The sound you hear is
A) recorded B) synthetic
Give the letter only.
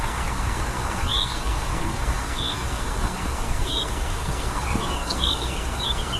B